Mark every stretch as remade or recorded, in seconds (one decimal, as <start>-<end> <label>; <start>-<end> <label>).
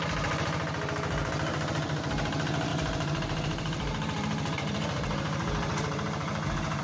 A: 0.0-2.7 recorded; 2.7-6.8 remade